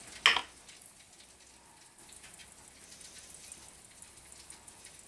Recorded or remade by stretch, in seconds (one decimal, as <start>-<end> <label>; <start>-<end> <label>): 0.0-5.1 recorded